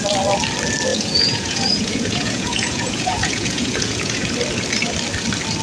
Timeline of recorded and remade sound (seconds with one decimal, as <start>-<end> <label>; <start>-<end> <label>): 0.0-0.9 recorded; 0.9-4.3 remade; 4.3-5.6 recorded